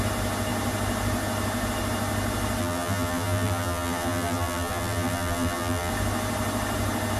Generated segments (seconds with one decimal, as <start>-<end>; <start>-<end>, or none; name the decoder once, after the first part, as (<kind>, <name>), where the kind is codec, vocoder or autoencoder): 2.6-5.9 (vocoder, BigVGAN v2)